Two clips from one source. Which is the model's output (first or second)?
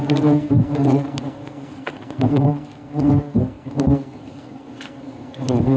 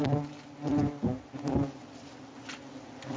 first